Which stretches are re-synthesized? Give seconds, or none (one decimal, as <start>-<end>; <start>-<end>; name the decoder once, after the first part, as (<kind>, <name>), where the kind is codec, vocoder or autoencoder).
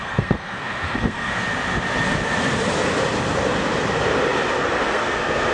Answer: 0.0-1.4 (codec, SNAC); 4.7-5.5